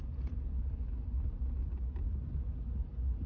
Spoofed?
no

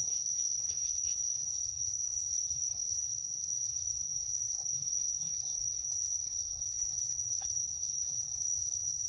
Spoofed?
yes